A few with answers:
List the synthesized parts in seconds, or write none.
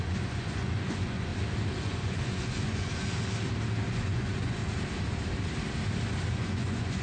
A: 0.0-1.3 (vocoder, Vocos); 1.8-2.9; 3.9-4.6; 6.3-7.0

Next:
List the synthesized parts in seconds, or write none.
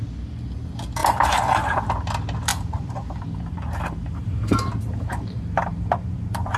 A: 1.0-1.8 (vocoder, BigVGAN v2); 2.5-6.6